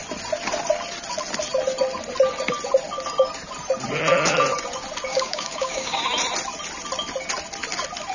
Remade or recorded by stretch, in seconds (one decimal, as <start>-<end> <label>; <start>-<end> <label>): 0.0-5.1 recorded; 5.1-6.0 remade; 6.0-8.1 recorded